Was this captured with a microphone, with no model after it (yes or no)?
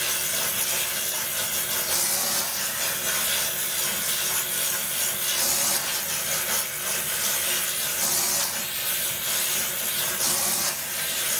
yes